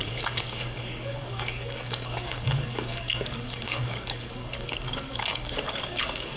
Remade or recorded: remade